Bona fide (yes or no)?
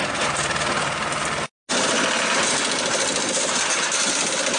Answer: yes